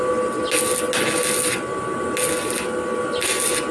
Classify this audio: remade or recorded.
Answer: recorded